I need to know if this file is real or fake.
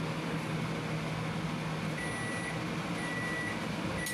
real